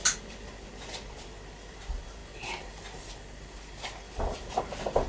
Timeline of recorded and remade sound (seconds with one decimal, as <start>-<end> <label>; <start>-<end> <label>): 0.0-5.1 recorded